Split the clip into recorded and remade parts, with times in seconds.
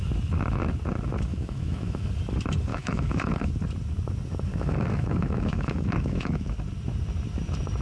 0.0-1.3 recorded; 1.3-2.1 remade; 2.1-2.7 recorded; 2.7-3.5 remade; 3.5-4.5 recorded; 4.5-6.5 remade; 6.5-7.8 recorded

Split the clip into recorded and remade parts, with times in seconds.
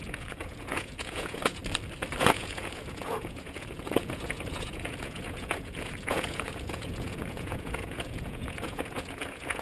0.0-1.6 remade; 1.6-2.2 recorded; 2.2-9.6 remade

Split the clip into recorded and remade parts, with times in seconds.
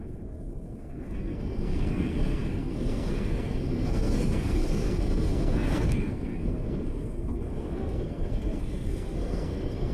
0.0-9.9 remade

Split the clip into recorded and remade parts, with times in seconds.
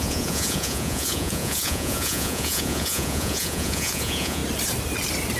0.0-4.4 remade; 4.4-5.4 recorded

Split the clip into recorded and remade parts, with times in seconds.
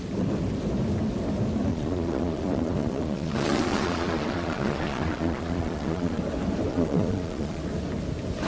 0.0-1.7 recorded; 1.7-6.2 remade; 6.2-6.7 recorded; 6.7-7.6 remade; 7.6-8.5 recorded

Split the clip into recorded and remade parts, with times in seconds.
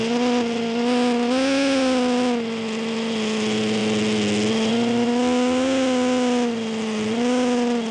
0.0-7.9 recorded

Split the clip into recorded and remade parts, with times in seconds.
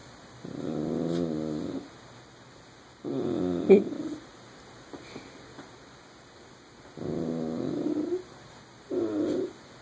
0.0-9.8 recorded